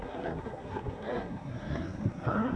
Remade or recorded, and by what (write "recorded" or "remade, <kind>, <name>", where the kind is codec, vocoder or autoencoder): remade, codec, SNAC